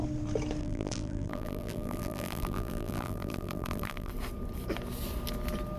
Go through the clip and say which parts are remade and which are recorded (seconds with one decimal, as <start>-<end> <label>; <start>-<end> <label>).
0.0-0.6 recorded; 0.6-4.1 remade; 4.1-5.8 recorded